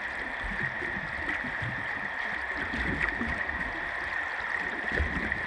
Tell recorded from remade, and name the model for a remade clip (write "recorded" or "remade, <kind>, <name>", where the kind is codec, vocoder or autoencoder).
recorded